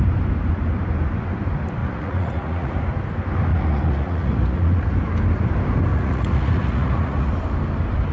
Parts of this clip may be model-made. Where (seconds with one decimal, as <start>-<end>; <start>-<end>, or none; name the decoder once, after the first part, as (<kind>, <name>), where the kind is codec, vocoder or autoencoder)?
1.8-2.7 (vocoder, Vocos); 3.5-4.9; 5.9-7.3